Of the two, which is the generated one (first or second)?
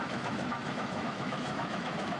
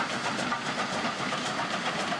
first